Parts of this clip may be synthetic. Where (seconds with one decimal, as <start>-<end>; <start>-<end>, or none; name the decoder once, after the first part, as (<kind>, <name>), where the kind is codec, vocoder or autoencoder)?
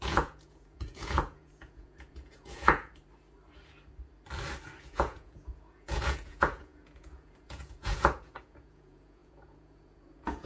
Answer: 0.0-2.9 (vocoder, Vocos); 4.8-10.5